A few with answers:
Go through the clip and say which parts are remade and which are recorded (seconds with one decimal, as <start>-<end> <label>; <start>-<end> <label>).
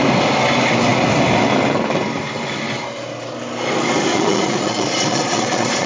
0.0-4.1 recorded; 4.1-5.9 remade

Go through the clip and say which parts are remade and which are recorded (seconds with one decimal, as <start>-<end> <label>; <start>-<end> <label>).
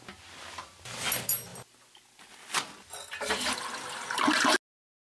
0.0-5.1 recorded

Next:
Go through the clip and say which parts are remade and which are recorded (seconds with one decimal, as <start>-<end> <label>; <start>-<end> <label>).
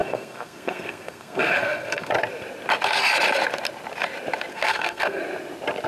0.0-2.1 remade; 2.1-4.5 recorded; 4.5-5.2 remade; 5.2-5.9 recorded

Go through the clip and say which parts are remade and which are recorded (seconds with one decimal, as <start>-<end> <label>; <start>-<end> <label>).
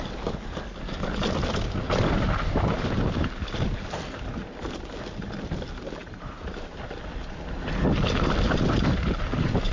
0.0-6.0 recorded; 6.0-6.8 remade; 6.8-9.7 recorded